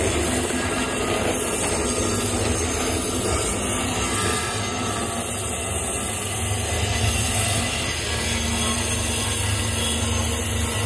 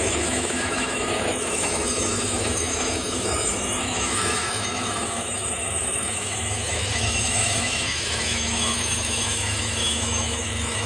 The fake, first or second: second